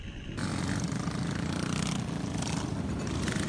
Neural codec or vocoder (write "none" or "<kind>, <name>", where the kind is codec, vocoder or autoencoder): none